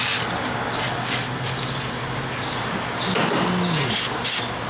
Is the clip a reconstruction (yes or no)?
no